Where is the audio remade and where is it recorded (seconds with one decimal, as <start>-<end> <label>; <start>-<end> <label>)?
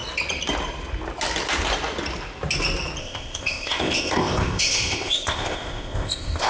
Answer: 0.0-3.0 recorded; 3.0-6.5 remade